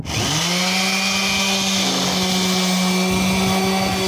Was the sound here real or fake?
real